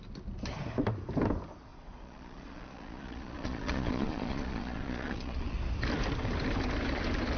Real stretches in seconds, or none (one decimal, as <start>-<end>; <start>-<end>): 0.0-1.7; 5.6-7.4